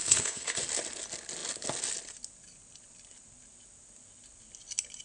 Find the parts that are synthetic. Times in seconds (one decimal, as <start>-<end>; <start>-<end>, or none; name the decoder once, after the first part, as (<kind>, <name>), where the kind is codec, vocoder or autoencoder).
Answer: 0.0-0.6 (codec, SNAC)